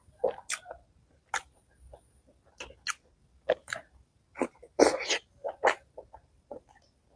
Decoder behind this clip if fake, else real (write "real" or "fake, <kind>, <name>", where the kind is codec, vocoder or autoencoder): real